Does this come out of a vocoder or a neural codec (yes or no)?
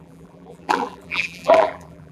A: yes